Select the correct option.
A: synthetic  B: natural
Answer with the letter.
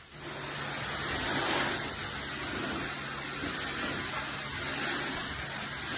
B